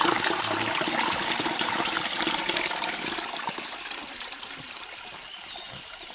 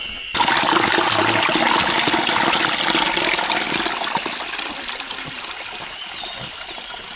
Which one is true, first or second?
second